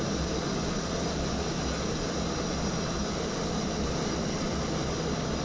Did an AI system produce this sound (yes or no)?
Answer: no